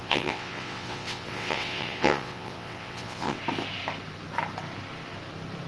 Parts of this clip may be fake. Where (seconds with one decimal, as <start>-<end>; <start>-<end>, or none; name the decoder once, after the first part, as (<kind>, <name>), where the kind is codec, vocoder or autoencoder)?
0.0-3.4 (vocoder, WaveNeXt)